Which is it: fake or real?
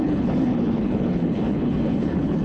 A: fake